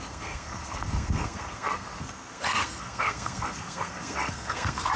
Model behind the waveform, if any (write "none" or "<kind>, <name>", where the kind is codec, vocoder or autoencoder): codec, SNAC